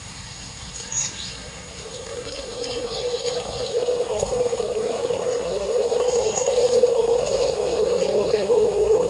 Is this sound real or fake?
fake